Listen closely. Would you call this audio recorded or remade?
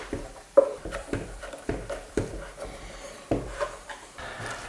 remade